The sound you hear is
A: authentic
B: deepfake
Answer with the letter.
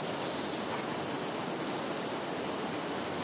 A